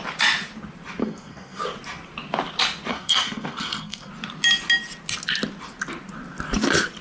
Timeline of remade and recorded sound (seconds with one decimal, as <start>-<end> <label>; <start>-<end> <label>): 0.0-1.0 recorded; 1.0-1.6 remade; 1.6-2.9 recorded; 2.9-4.1 remade; 4.1-7.0 recorded